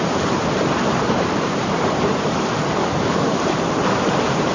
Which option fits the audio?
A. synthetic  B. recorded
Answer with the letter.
A